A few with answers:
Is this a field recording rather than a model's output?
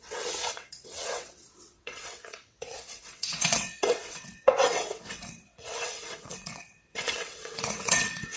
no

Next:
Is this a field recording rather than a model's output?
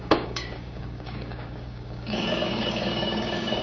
no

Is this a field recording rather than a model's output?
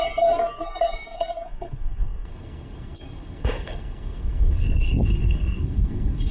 no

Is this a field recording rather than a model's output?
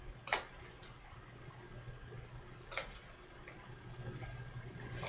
yes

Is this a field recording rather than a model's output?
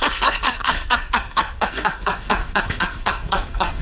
no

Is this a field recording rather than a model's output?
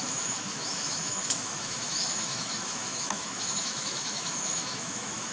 no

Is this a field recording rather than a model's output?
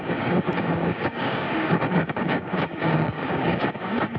no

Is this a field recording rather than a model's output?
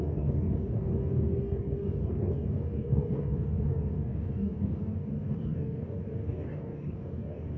no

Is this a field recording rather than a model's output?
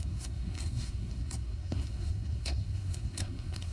no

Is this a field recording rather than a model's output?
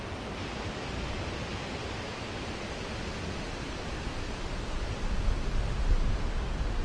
yes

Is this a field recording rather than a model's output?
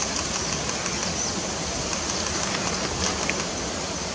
yes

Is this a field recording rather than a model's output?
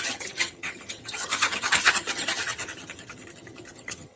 no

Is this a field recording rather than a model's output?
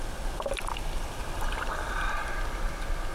yes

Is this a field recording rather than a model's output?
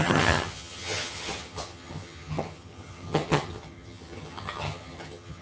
no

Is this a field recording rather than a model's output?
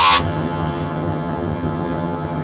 no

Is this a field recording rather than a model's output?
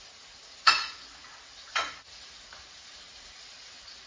no